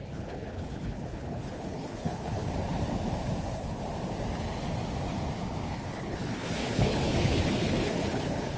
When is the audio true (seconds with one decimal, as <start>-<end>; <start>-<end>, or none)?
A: 2.5-3.4; 3.8-5.7